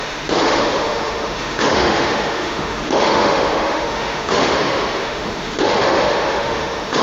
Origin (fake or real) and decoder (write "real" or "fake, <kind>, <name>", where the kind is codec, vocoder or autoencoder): fake, autoencoder, DAC-VAE